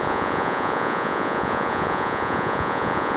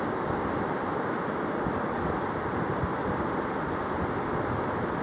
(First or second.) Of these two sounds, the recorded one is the second